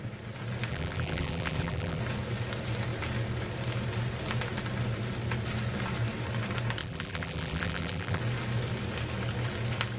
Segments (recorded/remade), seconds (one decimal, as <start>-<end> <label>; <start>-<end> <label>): 0.0-0.7 recorded; 0.7-2.0 remade; 2.0-6.8 recorded; 6.8-8.2 remade; 8.2-10.0 recorded